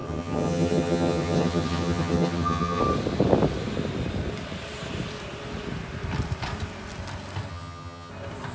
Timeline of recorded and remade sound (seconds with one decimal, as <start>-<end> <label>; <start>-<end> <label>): 0.0-2.8 remade; 2.8-7.5 recorded; 7.5-8.1 remade; 8.1-8.5 recorded